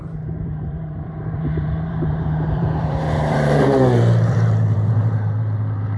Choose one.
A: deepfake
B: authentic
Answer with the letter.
A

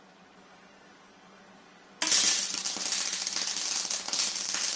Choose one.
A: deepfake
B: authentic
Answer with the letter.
B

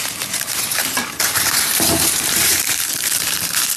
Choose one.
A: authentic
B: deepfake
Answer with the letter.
B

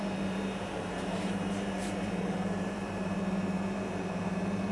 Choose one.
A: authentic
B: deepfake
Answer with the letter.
B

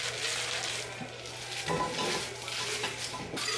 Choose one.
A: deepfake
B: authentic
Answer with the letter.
B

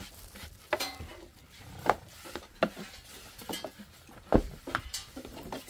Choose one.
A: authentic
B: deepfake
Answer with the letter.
B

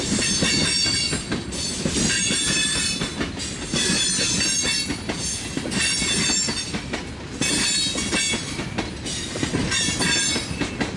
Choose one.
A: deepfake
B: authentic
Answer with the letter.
B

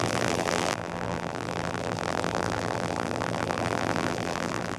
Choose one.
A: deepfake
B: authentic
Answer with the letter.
A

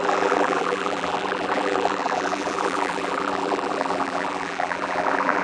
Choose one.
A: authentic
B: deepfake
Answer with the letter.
B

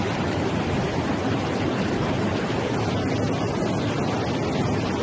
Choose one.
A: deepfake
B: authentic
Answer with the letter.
B